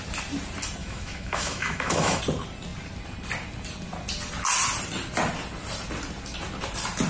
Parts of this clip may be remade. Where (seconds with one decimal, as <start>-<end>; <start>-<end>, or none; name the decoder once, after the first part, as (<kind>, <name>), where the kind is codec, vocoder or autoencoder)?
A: 0.8-2.2 (autoencoder, DAC-VAE)